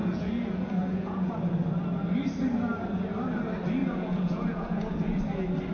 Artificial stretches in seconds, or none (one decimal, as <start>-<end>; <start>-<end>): 0.0-1.3; 3.8-5.2